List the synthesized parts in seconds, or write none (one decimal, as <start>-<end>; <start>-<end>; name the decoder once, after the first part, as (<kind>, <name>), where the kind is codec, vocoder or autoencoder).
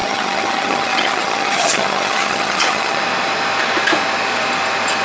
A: 0.0-3.0 (vocoder, HiFi-GAN)